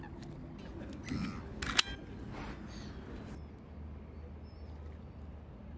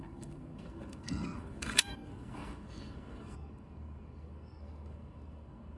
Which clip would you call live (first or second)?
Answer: first